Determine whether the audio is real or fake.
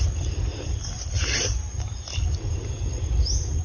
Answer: real